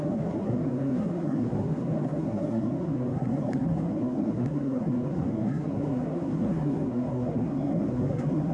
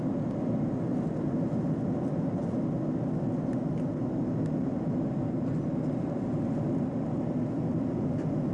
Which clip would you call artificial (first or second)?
first